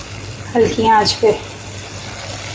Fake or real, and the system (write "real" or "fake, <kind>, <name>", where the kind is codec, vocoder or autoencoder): real